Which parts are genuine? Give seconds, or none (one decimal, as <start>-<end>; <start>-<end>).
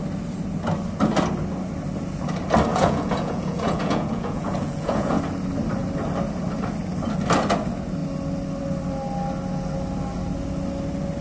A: 0.0-2.7; 5.2-11.2